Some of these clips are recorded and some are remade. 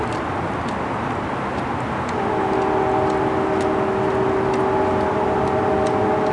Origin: recorded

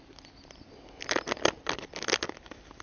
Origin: recorded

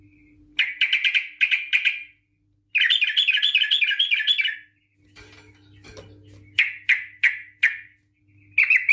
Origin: recorded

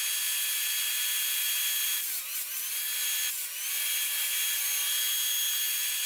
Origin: recorded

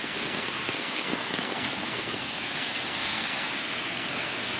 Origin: remade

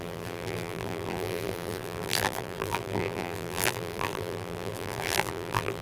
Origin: remade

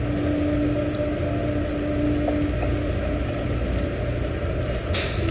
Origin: recorded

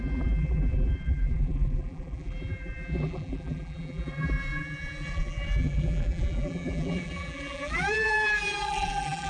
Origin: remade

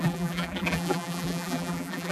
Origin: remade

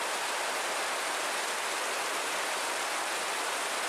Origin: recorded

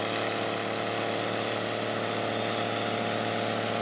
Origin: recorded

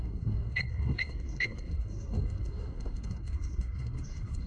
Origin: remade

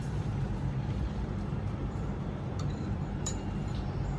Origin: remade